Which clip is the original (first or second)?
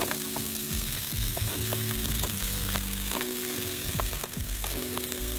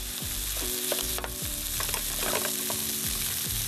second